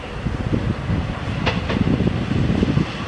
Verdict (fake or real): real